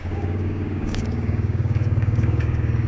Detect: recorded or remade remade